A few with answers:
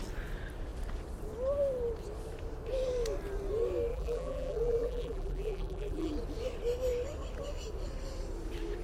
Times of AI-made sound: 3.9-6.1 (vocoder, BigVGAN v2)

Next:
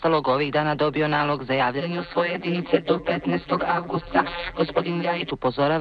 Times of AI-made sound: 1.8-5.3 (vocoder, BigVGAN v2)

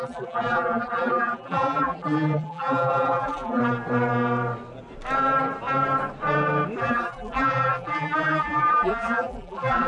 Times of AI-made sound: 0.0-3.6 (vocoder, BigVGAN v2); 6.8-9.9

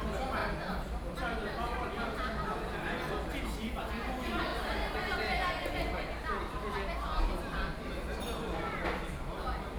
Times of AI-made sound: none

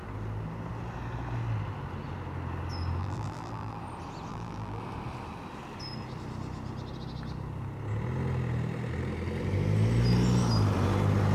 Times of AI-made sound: 3.0-3.8 (vocoder, BigVGAN v2); 4.3-4.8

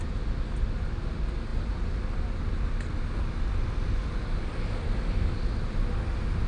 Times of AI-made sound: none

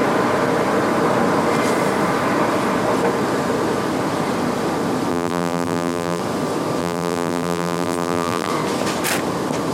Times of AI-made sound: 5.1-6.2 (vocoder, BigVGAN v2); 6.8-8.5